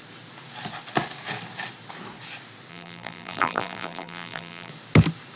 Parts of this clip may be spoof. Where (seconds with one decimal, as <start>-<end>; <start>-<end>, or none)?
2.7-4.7